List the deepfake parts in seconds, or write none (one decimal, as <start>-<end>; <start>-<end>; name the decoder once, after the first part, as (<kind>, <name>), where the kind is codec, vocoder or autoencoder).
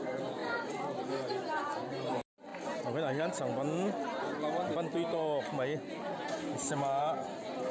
none